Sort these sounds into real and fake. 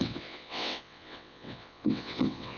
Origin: fake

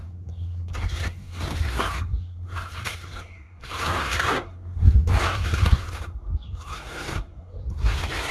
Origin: fake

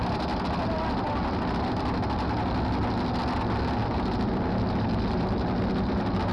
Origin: real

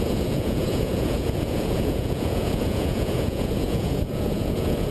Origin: fake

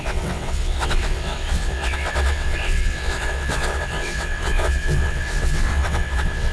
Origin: fake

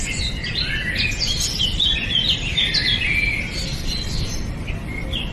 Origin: real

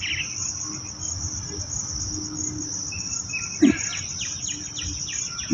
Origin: real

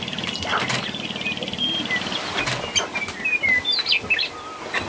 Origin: real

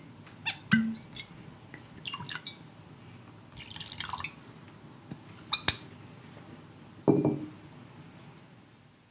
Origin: real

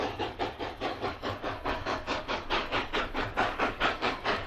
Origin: fake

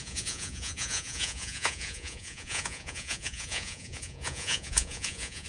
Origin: fake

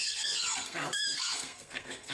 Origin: fake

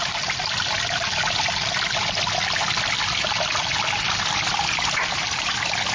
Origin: real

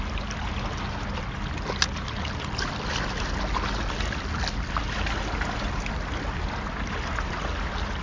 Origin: real